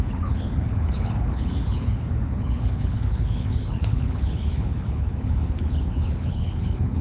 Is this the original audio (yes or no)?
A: no